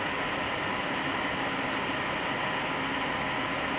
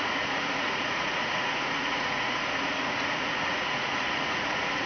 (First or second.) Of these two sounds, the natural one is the first